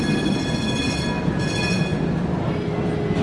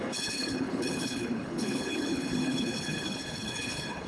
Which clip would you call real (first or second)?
first